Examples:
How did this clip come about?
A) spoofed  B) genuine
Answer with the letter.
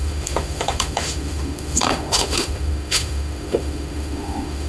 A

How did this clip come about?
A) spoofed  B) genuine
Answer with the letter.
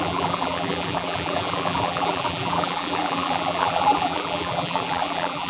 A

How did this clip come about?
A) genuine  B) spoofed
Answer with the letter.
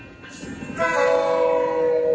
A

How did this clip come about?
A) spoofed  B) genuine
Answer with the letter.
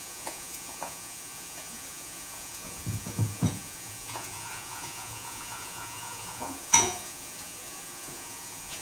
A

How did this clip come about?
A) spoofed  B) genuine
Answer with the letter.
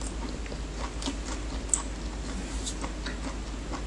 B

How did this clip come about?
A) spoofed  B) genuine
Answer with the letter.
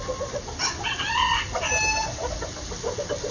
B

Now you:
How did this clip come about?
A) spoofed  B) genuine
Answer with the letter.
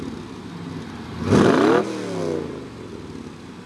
B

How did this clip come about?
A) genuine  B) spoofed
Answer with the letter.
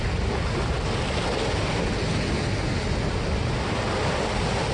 A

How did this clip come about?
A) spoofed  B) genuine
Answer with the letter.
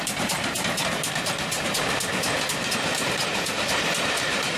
A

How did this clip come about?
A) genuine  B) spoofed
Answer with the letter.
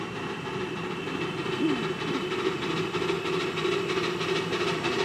A